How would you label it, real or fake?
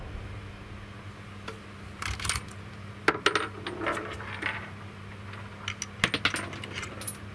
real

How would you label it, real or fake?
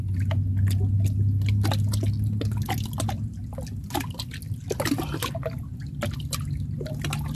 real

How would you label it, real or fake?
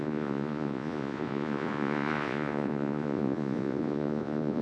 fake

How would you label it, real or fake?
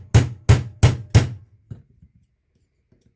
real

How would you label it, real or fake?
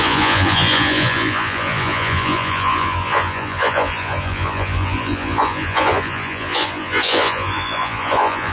fake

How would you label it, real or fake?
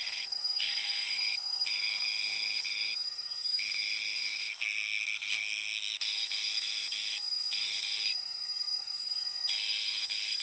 fake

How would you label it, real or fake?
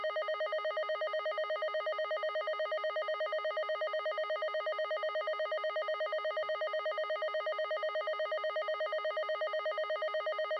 real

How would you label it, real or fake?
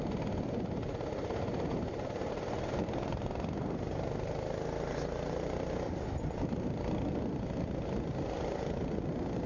real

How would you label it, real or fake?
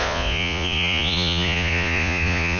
fake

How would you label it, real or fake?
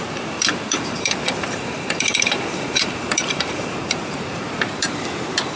fake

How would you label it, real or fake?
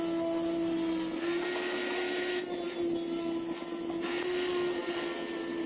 real